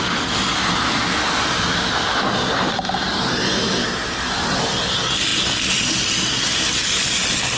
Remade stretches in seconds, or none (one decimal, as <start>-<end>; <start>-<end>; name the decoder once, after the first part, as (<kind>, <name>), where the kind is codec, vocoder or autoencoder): none